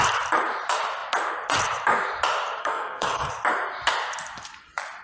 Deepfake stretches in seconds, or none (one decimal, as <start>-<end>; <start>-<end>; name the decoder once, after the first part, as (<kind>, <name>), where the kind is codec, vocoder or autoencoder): 2.6-3.3 (codec, SNAC)